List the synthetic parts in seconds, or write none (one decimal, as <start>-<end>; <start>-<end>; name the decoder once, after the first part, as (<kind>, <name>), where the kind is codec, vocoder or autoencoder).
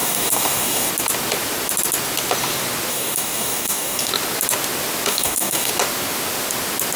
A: 0.0-0.9 (codec, DAC); 2.9-4.1; 5.1-5.7